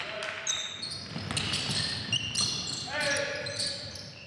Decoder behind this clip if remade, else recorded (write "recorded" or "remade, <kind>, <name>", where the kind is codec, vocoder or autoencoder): recorded